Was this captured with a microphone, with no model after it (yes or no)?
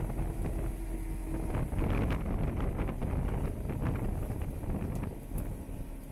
yes